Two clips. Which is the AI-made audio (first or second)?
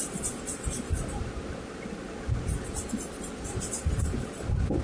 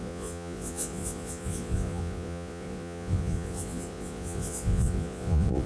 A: second